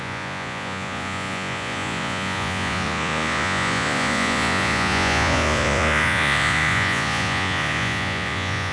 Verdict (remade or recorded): remade